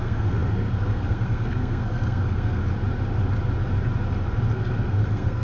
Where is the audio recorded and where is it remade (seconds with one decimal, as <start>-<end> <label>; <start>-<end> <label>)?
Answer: 0.0-2.6 remade; 2.6-4.5 recorded; 4.5-5.4 remade